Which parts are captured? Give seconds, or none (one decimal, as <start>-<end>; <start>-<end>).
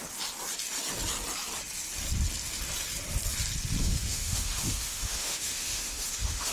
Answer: 0.0-3.8